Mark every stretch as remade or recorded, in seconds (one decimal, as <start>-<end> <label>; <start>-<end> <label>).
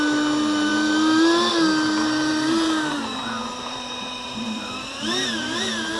0.0-2.3 recorded; 2.3-6.0 remade